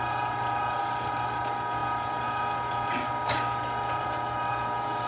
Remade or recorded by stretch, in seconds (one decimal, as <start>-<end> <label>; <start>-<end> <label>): 0.0-5.1 recorded